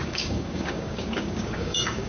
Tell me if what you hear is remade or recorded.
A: remade